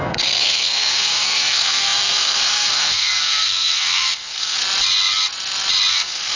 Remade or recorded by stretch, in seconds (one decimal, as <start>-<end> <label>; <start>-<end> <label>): 0.0-4.6 remade; 4.6-5.9 recorded; 5.9-6.4 remade